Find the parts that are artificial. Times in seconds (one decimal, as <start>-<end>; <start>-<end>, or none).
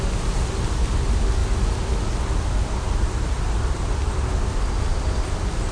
none